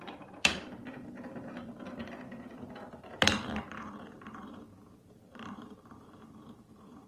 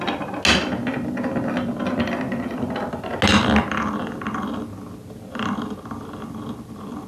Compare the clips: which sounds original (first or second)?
second